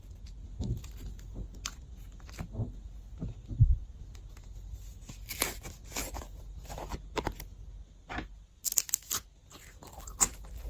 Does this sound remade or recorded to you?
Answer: recorded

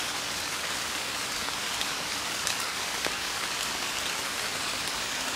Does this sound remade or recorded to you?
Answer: remade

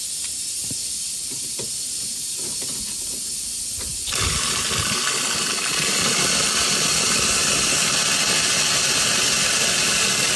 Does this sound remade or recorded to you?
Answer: recorded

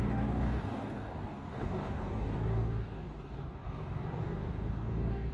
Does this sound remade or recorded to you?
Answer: remade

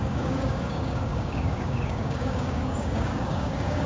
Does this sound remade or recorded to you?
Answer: remade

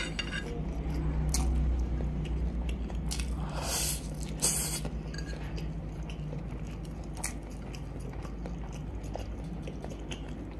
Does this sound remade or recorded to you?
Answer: recorded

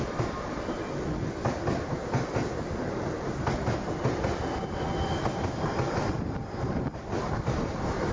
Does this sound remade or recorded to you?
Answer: recorded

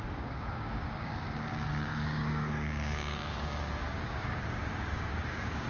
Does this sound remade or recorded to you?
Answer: remade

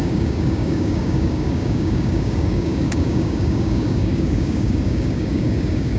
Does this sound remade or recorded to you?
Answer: remade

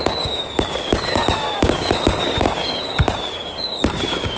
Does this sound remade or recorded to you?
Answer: remade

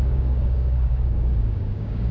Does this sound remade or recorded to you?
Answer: remade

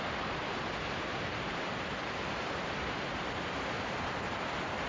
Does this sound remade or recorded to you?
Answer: recorded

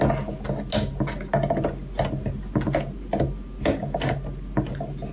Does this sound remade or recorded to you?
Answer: recorded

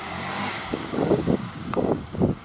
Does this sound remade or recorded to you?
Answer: remade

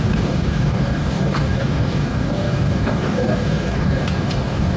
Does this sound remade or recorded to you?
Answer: remade